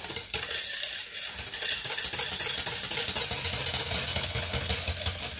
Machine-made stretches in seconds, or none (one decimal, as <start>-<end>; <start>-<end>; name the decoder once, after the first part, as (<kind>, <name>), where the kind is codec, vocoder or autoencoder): 4.1-4.7 (codec, HILCodec)